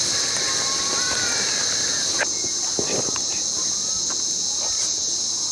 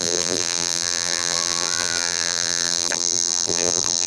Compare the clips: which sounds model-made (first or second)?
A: second